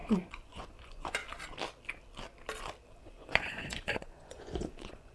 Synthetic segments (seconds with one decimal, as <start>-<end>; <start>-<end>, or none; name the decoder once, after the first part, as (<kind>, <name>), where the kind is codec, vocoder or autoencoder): 0.0-1.2 (vocoder, Vocos); 3.0-5.1